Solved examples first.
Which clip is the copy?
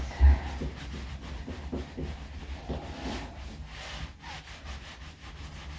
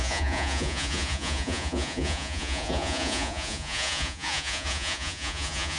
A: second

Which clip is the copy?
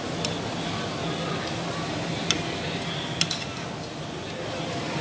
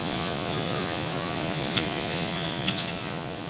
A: second